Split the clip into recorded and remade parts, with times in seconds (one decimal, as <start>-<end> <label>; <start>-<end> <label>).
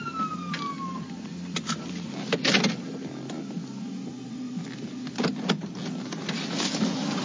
0.0-7.2 recorded